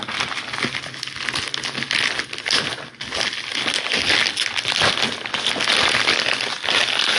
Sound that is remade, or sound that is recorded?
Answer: recorded